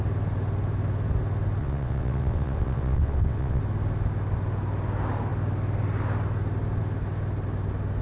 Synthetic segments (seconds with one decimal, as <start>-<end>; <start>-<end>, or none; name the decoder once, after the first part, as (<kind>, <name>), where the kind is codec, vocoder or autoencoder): 1.6-3.6 (vocoder, WaveNeXt)